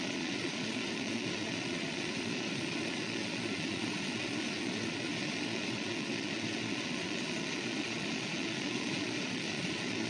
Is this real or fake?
fake